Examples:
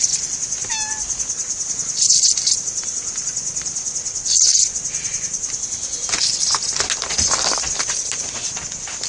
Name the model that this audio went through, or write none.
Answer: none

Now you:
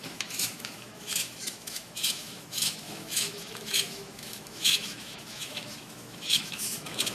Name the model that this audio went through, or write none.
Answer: autoencoder, DAC-VAE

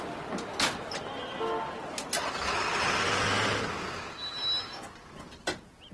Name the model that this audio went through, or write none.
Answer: none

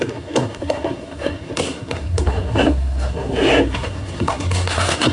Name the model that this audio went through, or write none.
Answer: codec, SNAC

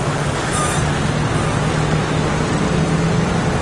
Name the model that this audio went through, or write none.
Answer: none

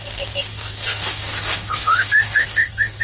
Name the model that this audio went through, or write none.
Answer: codec, DAC